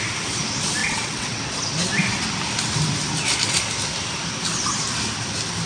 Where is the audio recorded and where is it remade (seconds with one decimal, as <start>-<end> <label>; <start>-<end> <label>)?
0.0-0.8 recorded; 0.8-1.4 remade; 1.4-5.7 recorded